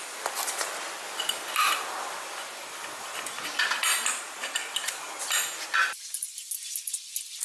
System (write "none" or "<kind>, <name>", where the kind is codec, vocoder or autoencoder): none